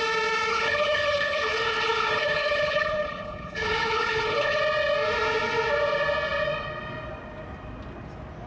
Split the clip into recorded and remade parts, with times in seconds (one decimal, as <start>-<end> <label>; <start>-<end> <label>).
0.0-0.5 recorded; 0.5-4.6 remade; 4.6-8.5 recorded